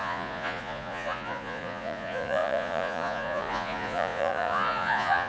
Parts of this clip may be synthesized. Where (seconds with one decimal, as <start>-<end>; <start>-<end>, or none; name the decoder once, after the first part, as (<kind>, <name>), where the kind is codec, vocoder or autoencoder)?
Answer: 0.0-5.3 (vocoder, Vocos)